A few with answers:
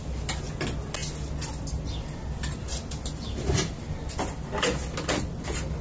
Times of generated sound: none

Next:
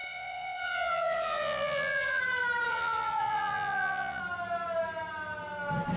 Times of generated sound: 0.0-2.2 (vocoder, Vocos); 2.7-4.2

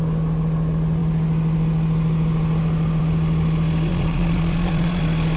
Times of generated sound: 3.9-5.0 (vocoder, Vocos)